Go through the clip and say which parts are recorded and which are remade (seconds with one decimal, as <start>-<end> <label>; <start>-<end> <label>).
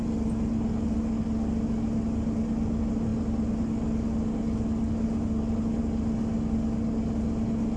0.0-7.8 recorded